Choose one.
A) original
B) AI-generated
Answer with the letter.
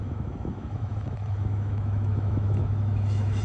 B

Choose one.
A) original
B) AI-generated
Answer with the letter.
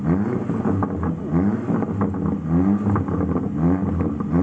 A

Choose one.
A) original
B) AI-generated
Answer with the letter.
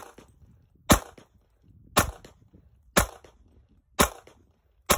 A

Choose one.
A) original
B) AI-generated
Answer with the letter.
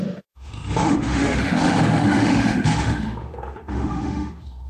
B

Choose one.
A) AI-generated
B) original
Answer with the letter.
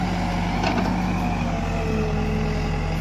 B